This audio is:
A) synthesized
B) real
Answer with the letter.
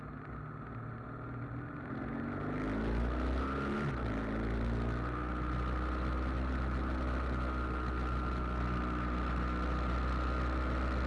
B